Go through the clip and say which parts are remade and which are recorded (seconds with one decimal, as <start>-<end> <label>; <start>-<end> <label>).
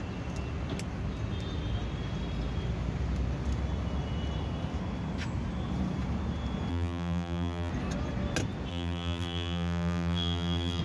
0.0-6.7 recorded; 6.7-7.7 remade; 7.7-8.7 recorded; 8.7-10.8 remade